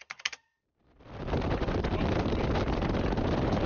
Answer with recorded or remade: recorded